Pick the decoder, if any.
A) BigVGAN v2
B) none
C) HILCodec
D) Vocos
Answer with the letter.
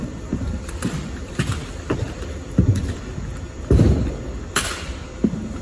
A